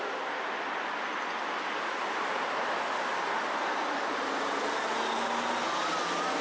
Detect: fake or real real